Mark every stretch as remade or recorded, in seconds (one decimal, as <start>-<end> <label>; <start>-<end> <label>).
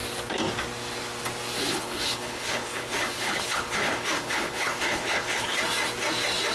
0.0-1.7 recorded; 1.7-5.6 remade; 5.6-6.5 recorded